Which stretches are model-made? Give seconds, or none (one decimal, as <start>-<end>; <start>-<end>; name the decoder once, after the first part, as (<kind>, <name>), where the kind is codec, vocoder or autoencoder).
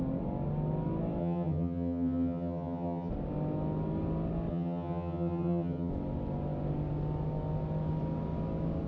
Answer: 1.2-3.1 (vocoder, HiFi-GAN); 4.5-5.9